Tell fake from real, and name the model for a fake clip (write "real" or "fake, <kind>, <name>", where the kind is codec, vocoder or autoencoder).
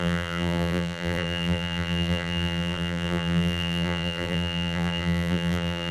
fake, vocoder, BigVGAN v2